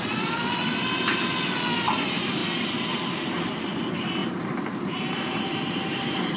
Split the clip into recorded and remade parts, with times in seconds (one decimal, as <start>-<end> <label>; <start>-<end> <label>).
0.0-4.2 recorded; 4.2-6.4 remade